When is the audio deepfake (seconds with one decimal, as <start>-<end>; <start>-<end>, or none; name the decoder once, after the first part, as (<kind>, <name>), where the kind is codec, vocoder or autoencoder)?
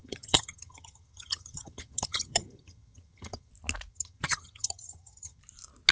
0.0-3.5 (vocoder, HiFi-GAN); 3.9-5.4